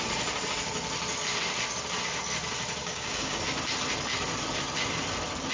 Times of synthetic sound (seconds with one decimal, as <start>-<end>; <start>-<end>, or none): 2.8-3.4